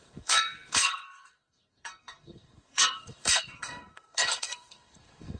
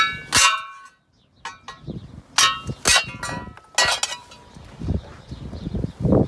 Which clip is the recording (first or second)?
second